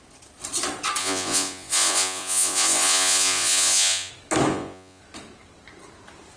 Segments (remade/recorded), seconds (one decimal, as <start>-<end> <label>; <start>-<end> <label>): 0.0-1.0 recorded; 1.0-4.1 remade; 4.1-4.5 recorded; 4.5-5.0 remade; 5.0-6.4 recorded